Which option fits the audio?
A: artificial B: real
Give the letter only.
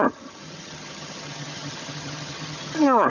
A